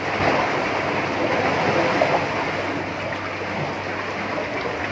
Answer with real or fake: real